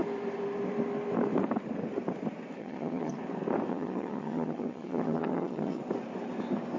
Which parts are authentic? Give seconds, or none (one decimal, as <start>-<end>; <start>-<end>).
0.0-2.6; 3.2-3.7; 5.8-6.8